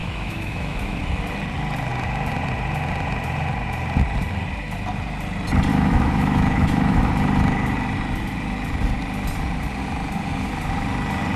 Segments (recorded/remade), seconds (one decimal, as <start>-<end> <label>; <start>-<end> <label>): 0.0-1.0 remade; 1.0-5.7 recorded; 5.7-7.1 remade; 7.1-11.4 recorded